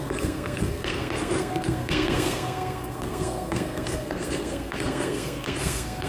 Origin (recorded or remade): remade